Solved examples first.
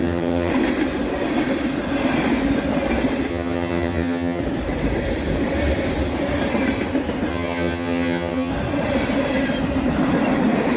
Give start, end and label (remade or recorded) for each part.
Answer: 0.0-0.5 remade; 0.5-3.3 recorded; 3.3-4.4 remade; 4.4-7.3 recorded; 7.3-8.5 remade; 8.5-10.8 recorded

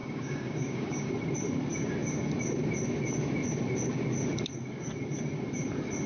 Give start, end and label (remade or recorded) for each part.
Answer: 0.0-1.1 remade; 1.1-6.1 recorded

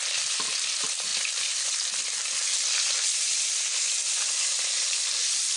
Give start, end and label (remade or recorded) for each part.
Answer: 0.0-5.6 recorded

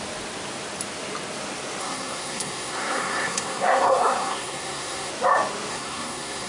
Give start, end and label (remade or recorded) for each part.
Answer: 0.0-1.8 recorded; 1.8-5.1 remade; 5.1-5.7 recorded; 5.7-6.5 remade

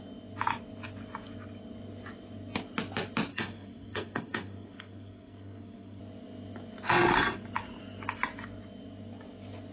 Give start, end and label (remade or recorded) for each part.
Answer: 0.0-3.3 recorded; 3.3-6.0 remade; 6.0-9.7 recorded

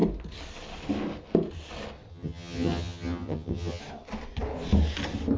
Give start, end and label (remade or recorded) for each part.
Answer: 0.0-2.1 recorded; 2.1-3.8 remade; 3.8-5.4 recorded